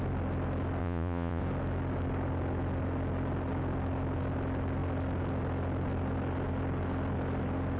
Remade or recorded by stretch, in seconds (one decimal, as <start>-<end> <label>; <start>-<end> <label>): 0.0-0.8 recorded; 0.8-1.4 remade; 1.4-7.8 recorded

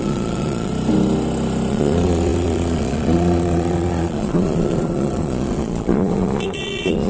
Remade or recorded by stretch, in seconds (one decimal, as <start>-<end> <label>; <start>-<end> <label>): 0.0-0.7 remade; 0.7-1.7 recorded; 1.7-7.1 remade

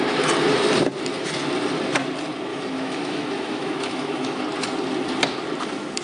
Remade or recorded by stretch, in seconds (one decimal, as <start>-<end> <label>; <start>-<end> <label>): 0.0-2.5 recorded; 2.5-4.4 remade; 4.4-6.0 recorded

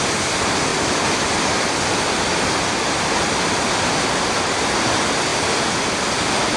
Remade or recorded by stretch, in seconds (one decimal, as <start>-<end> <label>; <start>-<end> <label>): 0.0-6.6 recorded